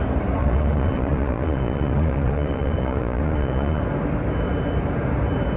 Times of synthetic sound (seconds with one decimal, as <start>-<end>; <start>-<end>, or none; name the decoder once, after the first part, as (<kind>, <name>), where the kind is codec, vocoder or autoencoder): 0.4-3.8 (vocoder, Vocos)